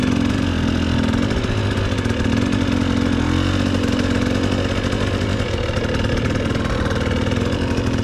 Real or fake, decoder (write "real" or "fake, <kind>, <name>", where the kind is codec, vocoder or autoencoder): real